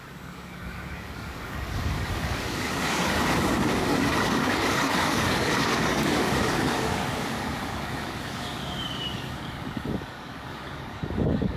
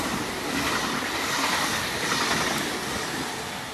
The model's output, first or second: first